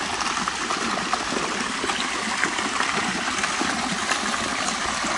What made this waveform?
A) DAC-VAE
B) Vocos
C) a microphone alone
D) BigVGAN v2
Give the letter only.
C